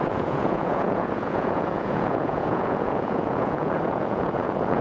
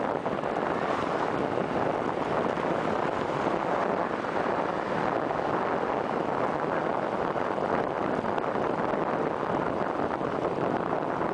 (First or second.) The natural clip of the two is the second